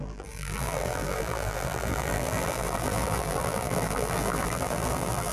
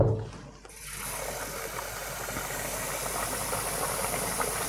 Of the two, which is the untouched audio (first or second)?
second